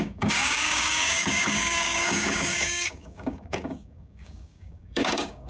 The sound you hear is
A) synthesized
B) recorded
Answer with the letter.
A